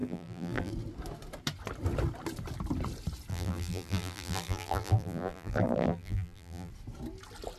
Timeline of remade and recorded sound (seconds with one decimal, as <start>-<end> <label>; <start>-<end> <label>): 0.0-0.7 remade; 0.7-3.3 recorded; 3.3-6.7 remade; 6.7-7.6 recorded